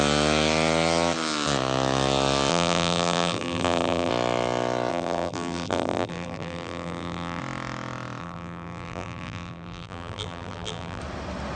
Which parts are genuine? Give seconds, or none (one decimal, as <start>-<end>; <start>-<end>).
0.0-2.5; 4.1-4.9; 7.4-8.2; 11.0-11.6